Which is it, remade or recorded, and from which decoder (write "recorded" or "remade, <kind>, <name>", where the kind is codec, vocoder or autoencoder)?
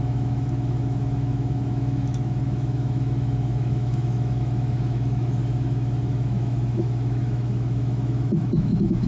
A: remade, autoencoder, DAC-VAE